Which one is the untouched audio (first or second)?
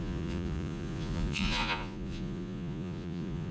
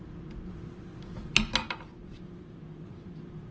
second